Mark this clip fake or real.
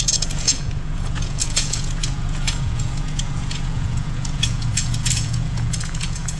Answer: fake